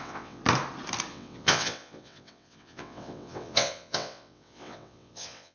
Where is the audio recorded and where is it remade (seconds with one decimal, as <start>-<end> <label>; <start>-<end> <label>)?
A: 0.0-0.4 remade; 0.4-1.1 recorded; 1.1-5.5 remade